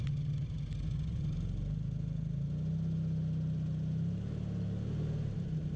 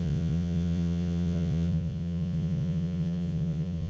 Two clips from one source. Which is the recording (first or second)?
first